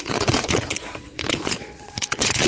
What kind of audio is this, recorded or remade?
remade